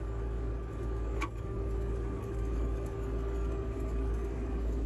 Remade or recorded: remade